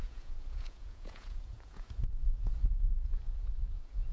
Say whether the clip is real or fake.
fake